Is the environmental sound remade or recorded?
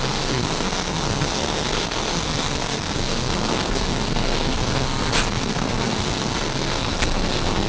remade